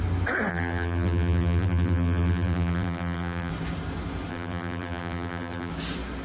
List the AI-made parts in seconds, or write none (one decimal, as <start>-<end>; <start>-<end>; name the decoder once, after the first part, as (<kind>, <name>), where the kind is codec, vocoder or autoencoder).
0.5-3.5 (vocoder, BigVGAN v2); 4.3-5.7